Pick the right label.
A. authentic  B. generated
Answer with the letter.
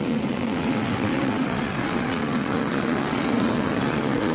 B